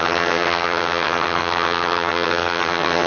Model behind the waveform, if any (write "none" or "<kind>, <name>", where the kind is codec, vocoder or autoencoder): vocoder, HiFi-GAN